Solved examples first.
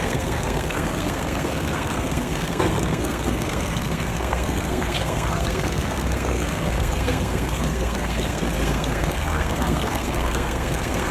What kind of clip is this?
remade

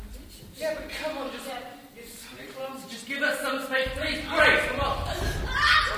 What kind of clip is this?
recorded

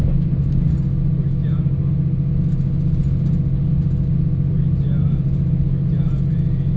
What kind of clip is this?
recorded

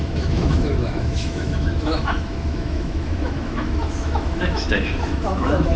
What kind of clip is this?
remade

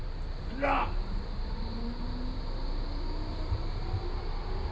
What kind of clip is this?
recorded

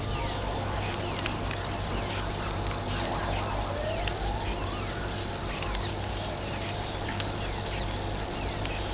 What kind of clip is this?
recorded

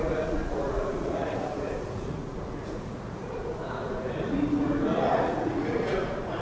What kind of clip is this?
remade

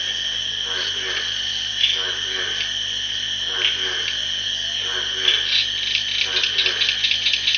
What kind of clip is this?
recorded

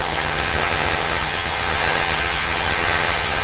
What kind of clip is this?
remade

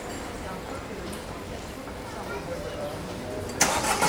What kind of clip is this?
remade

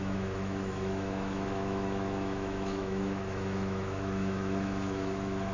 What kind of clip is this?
remade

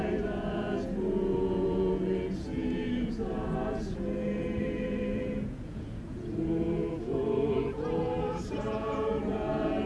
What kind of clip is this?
remade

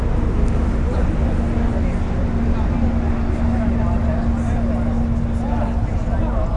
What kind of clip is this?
recorded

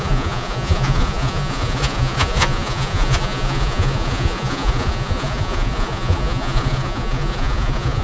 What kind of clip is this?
remade